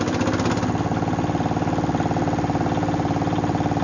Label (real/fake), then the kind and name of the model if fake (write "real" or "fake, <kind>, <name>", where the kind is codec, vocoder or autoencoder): real